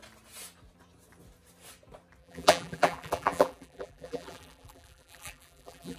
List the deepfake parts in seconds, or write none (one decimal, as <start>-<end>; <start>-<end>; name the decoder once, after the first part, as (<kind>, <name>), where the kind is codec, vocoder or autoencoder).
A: 2.2-6.0 (vocoder, BigVGAN v2)